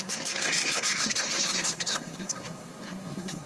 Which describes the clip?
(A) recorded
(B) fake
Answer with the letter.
B